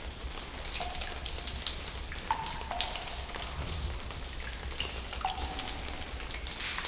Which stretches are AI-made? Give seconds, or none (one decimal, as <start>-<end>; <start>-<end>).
none